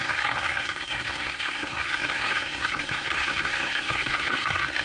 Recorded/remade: remade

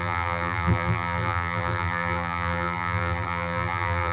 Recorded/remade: remade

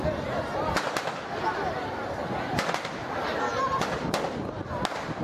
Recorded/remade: recorded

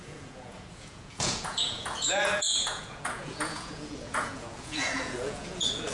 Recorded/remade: remade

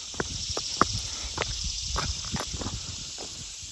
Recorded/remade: remade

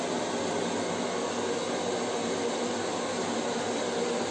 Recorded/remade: recorded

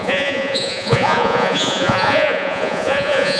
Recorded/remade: remade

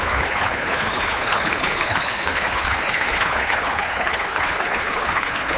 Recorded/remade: remade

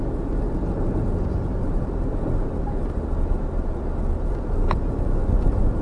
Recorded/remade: recorded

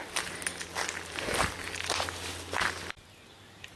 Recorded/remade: recorded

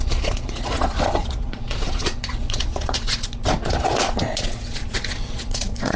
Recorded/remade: remade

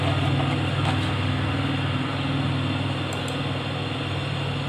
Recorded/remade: recorded